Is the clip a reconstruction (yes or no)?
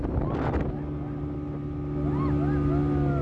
no